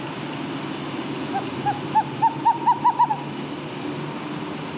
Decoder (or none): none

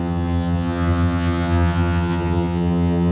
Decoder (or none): vocoder, HiFi-GAN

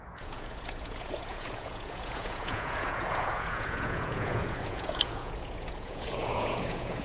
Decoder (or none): vocoder, Vocos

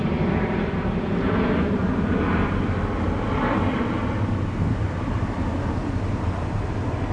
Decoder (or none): none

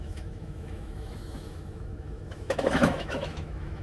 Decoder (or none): autoencoder, DAC-VAE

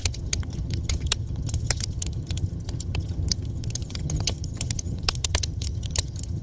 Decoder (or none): vocoder, HiFi-GAN